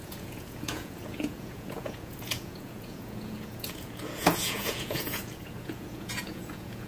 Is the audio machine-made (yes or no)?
yes